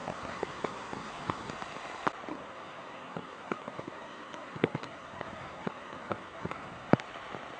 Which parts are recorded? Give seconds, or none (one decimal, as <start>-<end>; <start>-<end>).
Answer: 1.5-2.3; 6.9-7.6